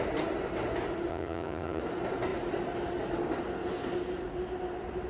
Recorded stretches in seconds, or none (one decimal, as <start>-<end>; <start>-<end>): 0.0-1.1; 1.8-5.1